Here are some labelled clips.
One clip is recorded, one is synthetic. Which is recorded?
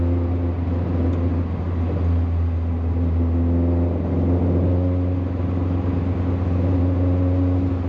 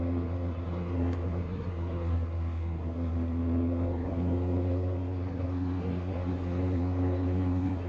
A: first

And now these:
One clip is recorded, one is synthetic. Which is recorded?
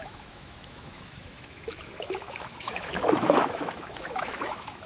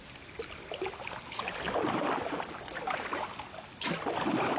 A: second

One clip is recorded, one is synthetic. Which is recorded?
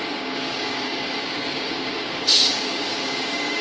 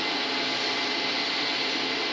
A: second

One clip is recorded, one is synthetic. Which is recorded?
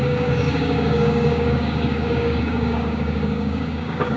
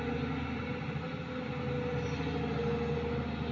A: second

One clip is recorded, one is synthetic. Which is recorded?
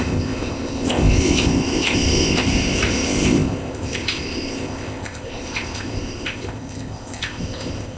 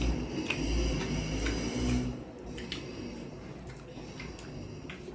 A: second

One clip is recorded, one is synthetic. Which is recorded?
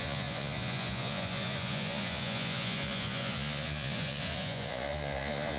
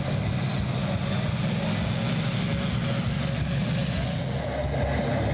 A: second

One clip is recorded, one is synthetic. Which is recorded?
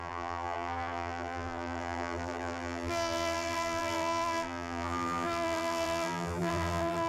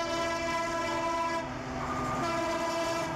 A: second